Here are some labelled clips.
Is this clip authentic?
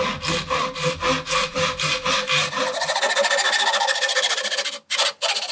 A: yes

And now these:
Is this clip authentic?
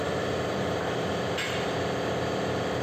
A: yes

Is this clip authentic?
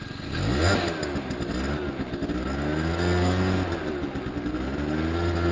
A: yes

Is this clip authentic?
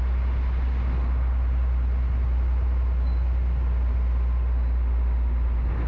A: yes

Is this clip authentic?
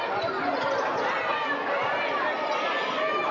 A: yes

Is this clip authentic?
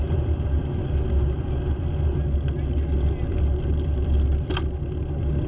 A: yes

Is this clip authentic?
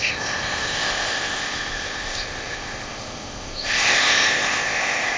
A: no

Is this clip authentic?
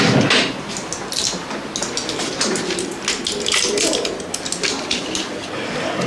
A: yes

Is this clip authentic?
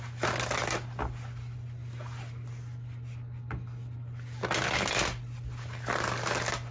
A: yes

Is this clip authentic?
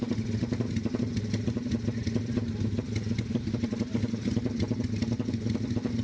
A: yes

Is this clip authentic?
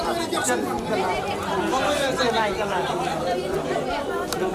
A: yes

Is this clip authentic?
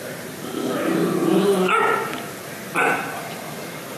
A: yes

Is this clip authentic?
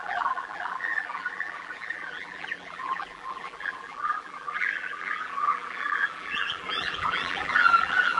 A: no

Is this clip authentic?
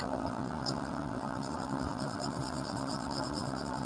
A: no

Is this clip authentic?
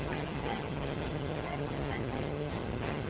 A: no